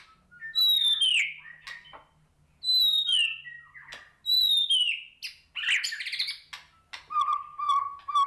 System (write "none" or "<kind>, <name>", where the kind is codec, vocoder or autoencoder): none